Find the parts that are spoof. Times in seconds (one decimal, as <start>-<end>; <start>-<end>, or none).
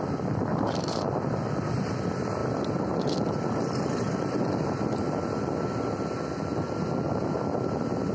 0.5-1.2